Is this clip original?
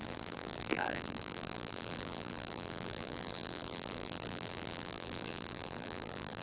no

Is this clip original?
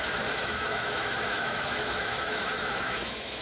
no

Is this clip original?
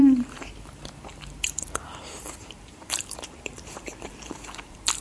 no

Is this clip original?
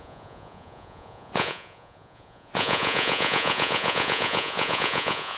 no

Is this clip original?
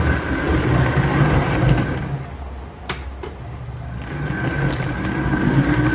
yes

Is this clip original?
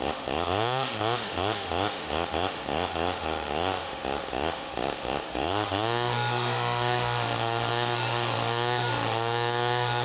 no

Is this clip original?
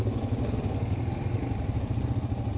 yes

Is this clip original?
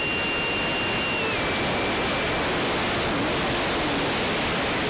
yes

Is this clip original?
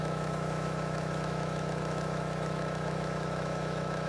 no